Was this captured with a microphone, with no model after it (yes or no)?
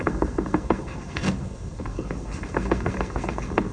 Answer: no